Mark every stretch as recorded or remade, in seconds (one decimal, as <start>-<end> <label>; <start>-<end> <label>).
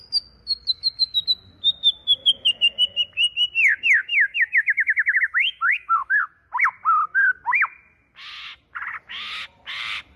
0.0-4.1 recorded; 4.1-6.1 remade; 6.1-10.2 recorded